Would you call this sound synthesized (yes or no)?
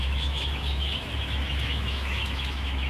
yes